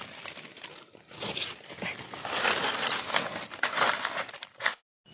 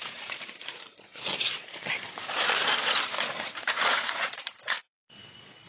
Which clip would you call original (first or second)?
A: first